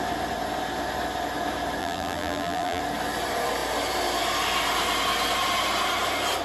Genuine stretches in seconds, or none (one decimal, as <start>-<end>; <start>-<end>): 0.0-1.8; 2.8-6.4

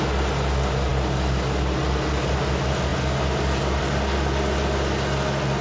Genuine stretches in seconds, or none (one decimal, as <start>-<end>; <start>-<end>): 0.0-5.6

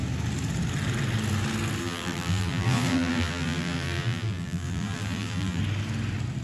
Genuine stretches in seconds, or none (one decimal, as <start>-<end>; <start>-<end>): 0.0-1.8; 5.6-6.4

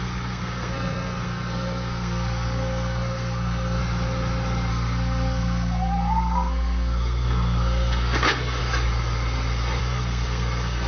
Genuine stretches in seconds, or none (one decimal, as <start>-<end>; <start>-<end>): 3.8-4.7; 8.6-9.8

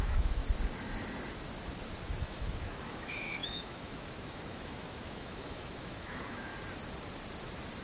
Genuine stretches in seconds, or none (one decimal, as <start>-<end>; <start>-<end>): 0.4-2.2; 6.5-7.8

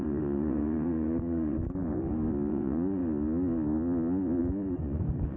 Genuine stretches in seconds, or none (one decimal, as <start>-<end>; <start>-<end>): 1.6-2.5; 3.0-4.4

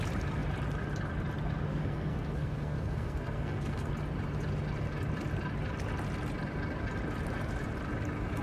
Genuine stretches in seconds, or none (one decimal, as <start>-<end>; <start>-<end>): 0.0-1.7; 3.9-8.4